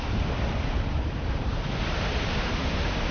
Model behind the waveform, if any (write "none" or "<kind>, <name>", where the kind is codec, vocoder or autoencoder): vocoder, BigVGAN v2